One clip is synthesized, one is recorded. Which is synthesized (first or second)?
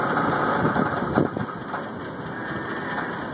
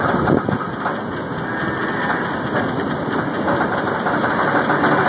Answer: first